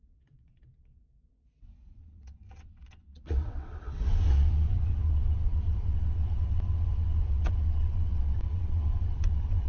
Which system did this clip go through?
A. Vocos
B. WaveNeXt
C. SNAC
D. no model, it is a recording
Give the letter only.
B